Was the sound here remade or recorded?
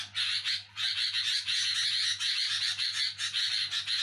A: recorded